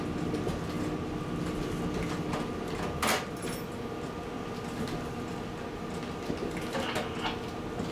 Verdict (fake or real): real